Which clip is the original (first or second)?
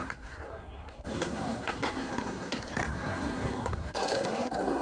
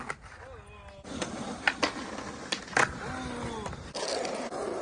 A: second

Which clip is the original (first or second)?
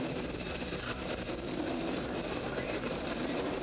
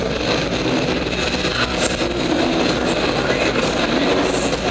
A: second